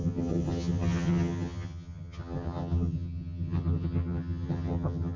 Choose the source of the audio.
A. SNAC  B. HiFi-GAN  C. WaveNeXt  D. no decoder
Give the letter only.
B